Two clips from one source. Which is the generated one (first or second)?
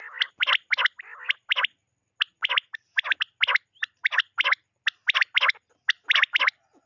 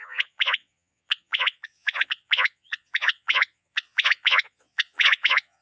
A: second